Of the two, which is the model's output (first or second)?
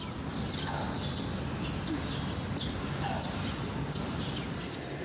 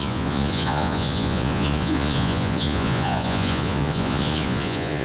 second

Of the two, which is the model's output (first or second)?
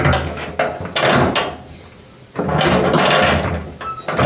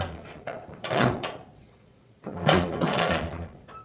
second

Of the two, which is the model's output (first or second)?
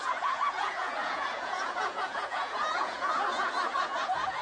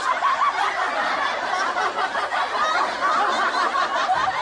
first